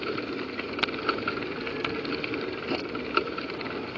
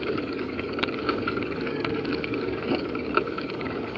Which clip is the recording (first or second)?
first